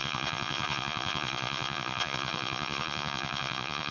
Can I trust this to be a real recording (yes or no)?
no